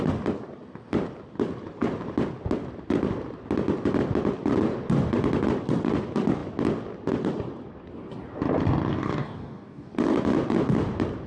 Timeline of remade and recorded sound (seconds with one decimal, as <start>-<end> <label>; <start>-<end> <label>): 0.0-8.9 recorded; 8.9-9.9 remade; 9.9-11.3 recorded